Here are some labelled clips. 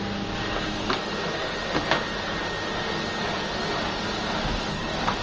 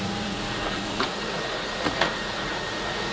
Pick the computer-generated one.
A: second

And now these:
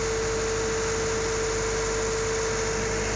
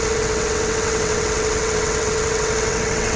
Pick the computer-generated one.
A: second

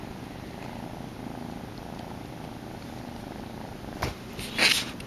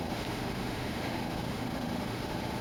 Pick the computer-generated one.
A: second